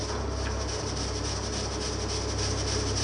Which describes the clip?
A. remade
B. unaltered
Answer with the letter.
B